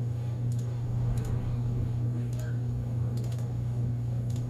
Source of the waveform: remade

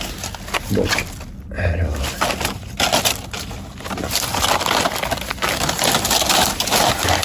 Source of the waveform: recorded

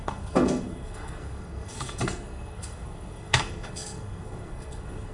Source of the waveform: remade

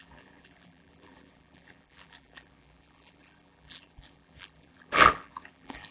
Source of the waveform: remade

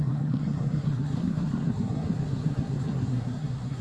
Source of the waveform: remade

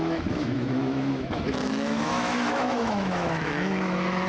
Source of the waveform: remade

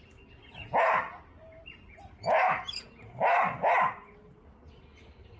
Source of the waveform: recorded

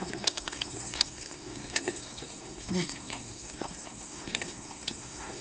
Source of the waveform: remade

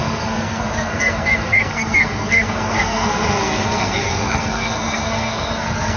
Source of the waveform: remade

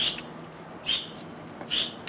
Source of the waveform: recorded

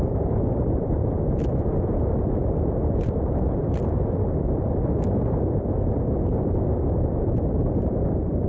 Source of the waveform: remade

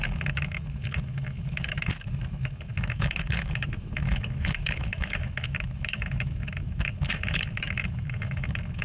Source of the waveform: remade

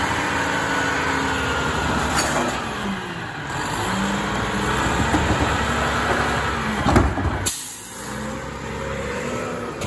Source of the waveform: recorded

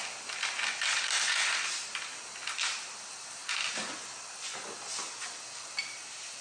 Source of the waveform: recorded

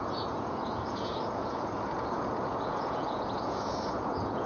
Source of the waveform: remade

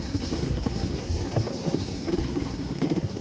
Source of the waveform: remade